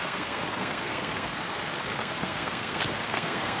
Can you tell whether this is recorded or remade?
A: remade